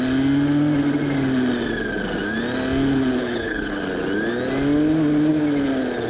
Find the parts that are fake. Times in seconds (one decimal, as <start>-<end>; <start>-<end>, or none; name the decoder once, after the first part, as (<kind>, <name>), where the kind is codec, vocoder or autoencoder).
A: 3.2-3.8 (codec, HILCodec)